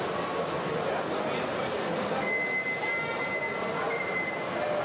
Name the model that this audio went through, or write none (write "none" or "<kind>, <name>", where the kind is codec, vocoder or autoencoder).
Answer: none